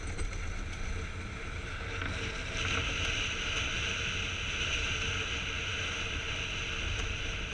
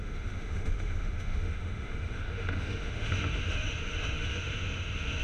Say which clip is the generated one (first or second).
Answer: second